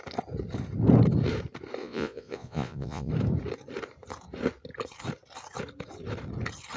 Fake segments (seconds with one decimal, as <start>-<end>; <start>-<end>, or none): 1.8-3.1